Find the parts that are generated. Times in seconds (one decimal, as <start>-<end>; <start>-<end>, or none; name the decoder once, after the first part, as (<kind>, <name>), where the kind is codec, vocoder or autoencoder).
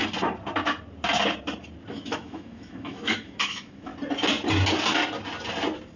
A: 1.9-3.9 (autoencoder, DAC-VAE)